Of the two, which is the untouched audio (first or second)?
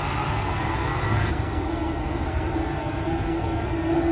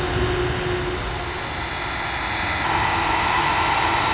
second